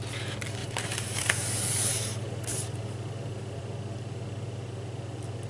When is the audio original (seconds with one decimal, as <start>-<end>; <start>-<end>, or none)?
0.0-0.6; 3.6-5.5